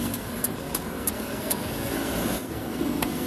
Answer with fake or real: fake